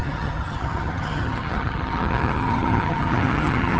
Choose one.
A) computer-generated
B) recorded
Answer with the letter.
A